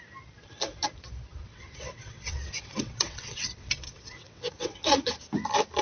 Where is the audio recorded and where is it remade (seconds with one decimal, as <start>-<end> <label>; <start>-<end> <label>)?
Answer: 0.0-1.3 recorded; 1.3-4.8 remade; 4.8-5.8 recorded